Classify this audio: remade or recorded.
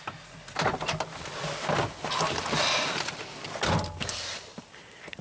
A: recorded